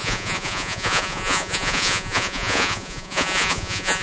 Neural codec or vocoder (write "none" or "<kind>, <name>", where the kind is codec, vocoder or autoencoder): vocoder, Vocos